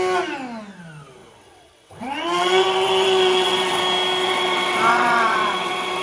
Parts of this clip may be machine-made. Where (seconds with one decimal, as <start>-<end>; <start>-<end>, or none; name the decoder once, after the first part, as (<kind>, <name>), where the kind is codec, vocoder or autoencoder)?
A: 1.2-3.8 (vocoder, WaveNeXt); 4.2-6.0